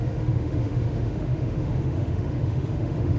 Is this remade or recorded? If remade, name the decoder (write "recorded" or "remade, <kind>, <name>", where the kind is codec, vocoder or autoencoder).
remade, autoencoder, DAC-VAE